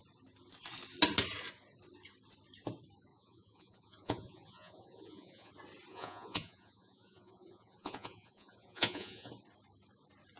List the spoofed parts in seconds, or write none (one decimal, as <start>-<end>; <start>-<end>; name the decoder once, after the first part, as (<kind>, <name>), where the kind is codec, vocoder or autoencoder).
3.1-5.5 (vocoder, Vocos); 5.9-9.3